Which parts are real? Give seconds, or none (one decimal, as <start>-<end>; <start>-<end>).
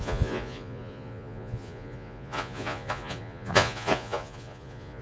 none